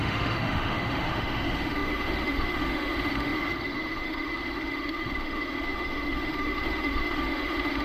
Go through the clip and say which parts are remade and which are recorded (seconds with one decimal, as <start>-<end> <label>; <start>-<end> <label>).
0.0-7.8 remade